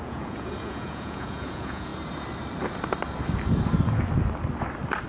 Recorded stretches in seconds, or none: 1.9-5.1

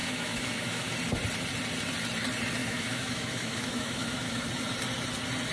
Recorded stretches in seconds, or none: 0.9-2.6; 4.4-5.5

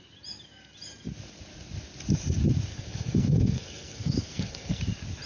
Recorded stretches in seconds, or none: 0.0-2.7; 4.8-5.3

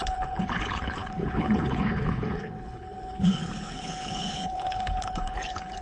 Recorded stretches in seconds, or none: none

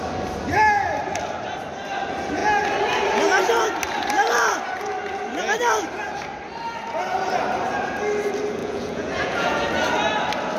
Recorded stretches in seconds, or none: 0.0-8.6; 9.6-10.6